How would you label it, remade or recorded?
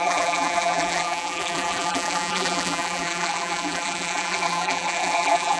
remade